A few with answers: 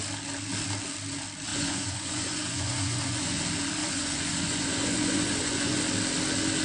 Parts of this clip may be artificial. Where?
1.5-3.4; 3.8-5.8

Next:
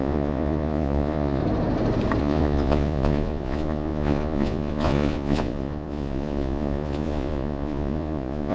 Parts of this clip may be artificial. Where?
0.0-1.4; 2.2-8.5

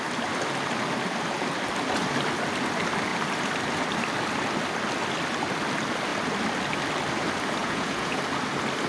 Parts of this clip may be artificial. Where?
7.6-8.2

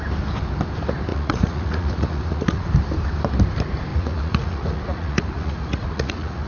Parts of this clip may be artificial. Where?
1.1-2.7; 3.9-6.5

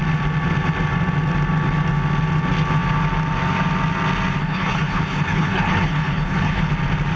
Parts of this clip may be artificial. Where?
4.4-6.7

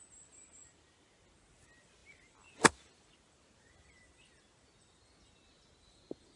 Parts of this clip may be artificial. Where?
none

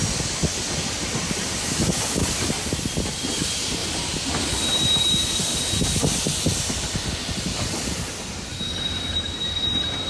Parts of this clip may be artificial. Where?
0.4-3.2

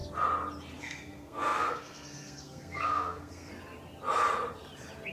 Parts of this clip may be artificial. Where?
0.8-3.5